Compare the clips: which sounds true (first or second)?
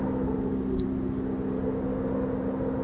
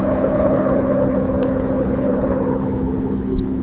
first